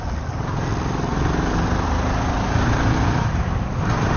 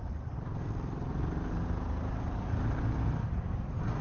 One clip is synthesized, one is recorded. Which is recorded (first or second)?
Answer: second